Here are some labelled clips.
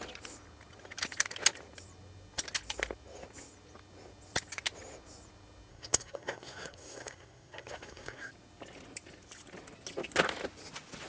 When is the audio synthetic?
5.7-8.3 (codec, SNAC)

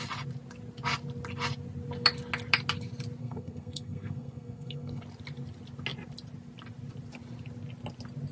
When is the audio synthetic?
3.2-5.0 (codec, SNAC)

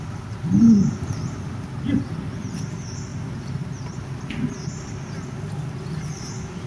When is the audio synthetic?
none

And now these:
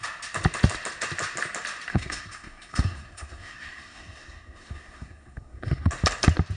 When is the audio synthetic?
1.9-5.9 (codec, SNAC)

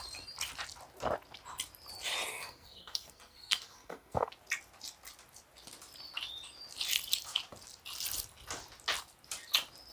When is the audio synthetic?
2.3-4.3 (codec, SNAC)

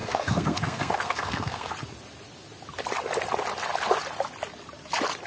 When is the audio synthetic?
0.0-1.7 (codec, SNAC)

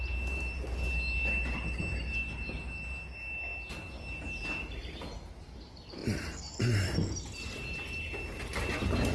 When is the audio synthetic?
none

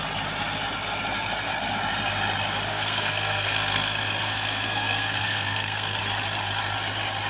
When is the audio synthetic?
2.7-6.0 (codec, SNAC)